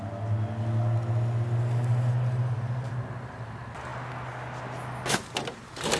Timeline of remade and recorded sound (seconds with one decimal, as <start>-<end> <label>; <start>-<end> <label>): 0.0-6.0 recorded